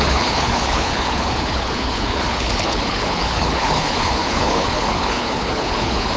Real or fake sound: fake